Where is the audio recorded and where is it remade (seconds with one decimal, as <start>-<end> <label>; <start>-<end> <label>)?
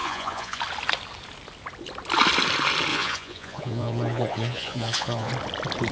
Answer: 0.0-0.6 remade; 0.6-2.9 recorded; 2.9-5.3 remade; 5.3-5.9 recorded